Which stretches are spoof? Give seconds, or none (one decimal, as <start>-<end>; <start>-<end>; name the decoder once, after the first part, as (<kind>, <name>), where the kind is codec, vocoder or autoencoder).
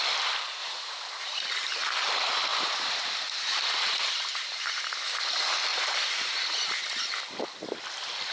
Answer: 0.6-1.4 (vocoder, BigVGAN v2); 2.5-4.8; 5.7-6.6